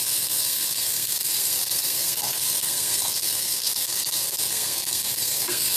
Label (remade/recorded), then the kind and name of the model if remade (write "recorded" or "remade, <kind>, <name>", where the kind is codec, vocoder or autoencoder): remade, codec, SNAC